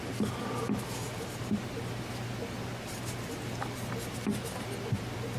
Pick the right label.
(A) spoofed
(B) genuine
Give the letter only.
B